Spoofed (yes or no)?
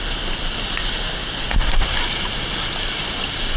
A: no